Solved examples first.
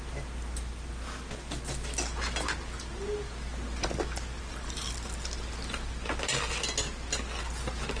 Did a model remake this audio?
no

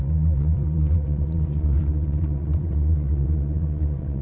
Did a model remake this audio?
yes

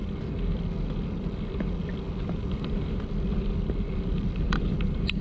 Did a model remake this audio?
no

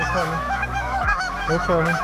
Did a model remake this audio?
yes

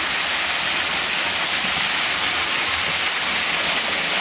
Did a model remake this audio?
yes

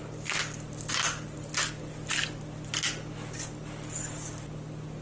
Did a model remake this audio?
no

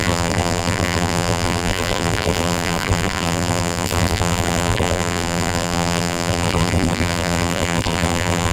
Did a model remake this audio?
yes